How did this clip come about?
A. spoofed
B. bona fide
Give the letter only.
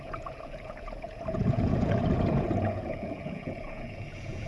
A